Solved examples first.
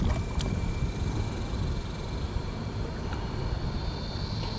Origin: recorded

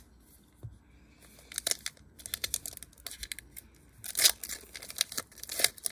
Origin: recorded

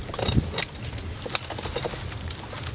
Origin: recorded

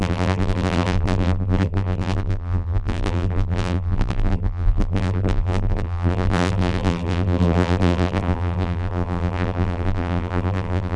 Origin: remade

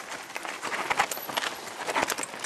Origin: recorded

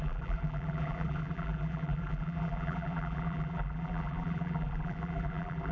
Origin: remade